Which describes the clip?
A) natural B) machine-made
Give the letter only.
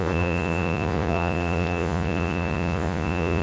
B